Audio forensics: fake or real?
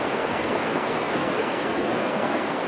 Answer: fake